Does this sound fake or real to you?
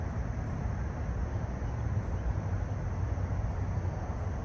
real